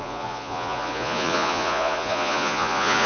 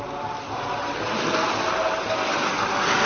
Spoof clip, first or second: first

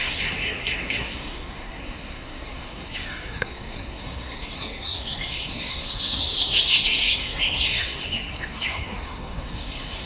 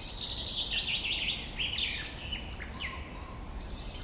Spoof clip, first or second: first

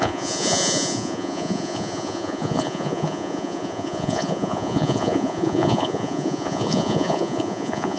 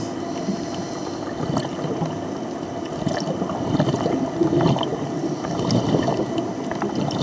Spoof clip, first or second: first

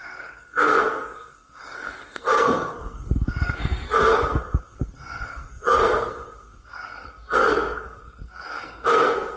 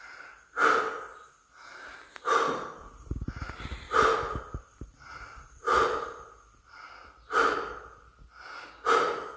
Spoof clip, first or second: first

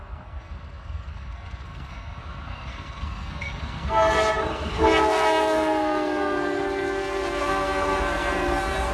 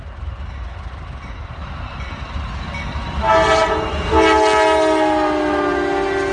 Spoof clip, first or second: first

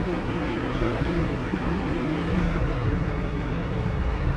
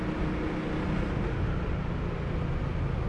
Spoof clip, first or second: first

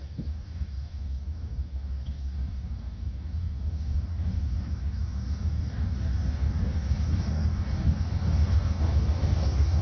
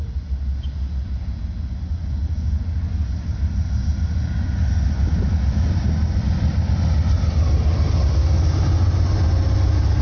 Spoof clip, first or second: first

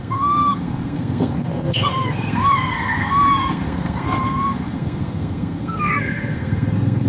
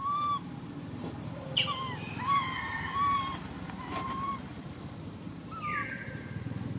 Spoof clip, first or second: first